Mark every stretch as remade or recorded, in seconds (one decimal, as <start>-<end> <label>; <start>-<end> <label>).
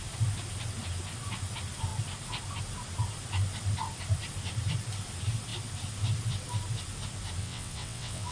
0.0-7.4 recorded; 7.4-8.3 remade